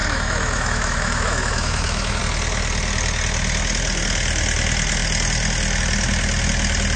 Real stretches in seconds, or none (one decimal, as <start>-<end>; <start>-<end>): 2.2-7.0